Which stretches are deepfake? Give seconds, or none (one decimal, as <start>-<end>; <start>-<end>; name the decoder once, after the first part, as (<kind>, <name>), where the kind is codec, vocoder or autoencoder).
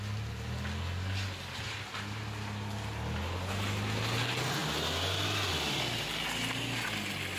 none